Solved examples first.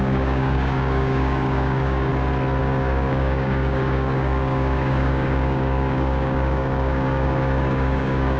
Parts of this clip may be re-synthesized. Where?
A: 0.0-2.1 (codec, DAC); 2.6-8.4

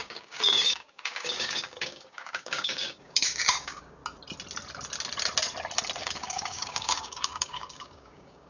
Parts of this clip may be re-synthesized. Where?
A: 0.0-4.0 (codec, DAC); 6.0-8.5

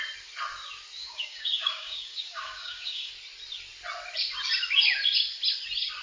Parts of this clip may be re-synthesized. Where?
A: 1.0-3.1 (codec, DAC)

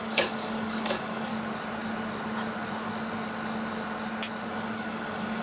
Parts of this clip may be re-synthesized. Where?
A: 0.0-1.3 (codec, DAC); 4.5-5.4

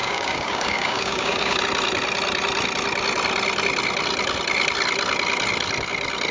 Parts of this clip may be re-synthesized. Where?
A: 0.0-1.6 (codec, DAC)

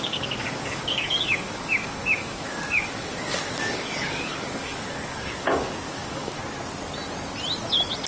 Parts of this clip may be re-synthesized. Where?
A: 0.0-6.4 (codec, DAC)